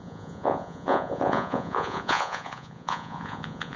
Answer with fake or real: fake